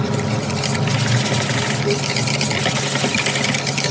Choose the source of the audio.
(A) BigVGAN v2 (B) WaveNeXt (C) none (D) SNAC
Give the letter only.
C